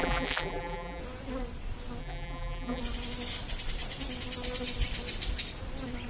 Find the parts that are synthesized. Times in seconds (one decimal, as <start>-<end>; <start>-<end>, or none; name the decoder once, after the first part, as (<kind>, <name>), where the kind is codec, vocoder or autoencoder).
0.0-1.0 (vocoder, BigVGAN v2); 2.0-2.8